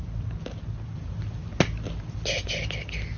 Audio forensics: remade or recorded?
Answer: recorded